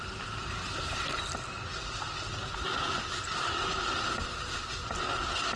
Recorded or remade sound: recorded